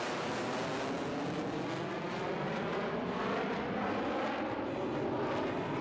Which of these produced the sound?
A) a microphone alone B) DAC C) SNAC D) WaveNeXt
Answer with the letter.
A